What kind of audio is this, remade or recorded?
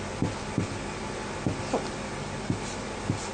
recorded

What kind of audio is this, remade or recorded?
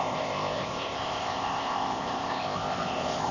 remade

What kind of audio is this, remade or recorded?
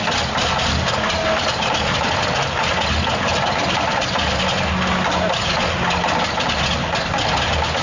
recorded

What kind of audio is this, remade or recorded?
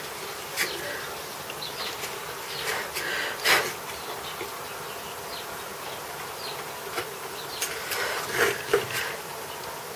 recorded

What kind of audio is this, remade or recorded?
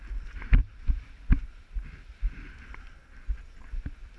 remade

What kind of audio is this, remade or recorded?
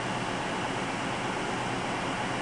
recorded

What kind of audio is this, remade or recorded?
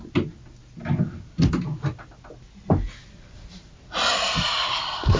recorded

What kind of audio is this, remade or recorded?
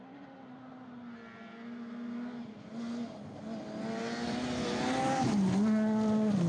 recorded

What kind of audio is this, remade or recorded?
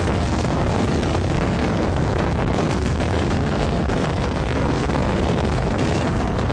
remade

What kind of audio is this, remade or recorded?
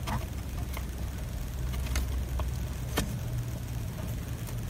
recorded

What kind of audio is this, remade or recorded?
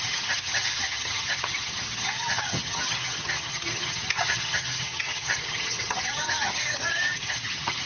remade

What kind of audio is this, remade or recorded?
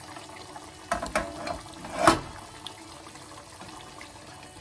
recorded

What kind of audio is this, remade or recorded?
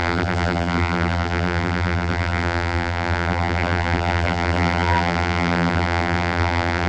remade